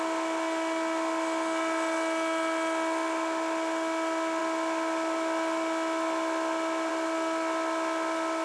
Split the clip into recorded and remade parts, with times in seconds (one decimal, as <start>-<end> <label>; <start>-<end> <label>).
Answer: 0.0-8.4 recorded